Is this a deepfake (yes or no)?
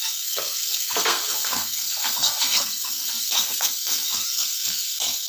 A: yes